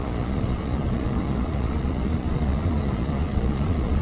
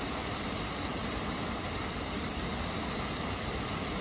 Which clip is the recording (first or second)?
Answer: second